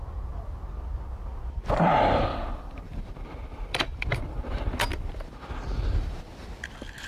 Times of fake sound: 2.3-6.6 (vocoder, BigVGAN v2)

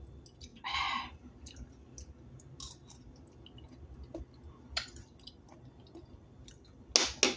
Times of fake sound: none

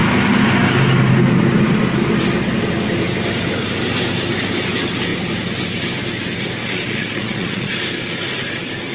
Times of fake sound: 6.6-7.7 (vocoder, Vocos)

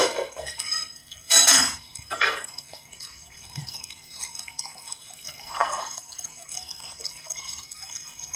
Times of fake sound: 0.0-8.4 (codec, SNAC)

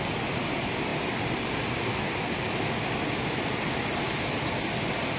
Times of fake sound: none